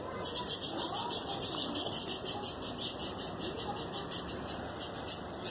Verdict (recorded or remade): recorded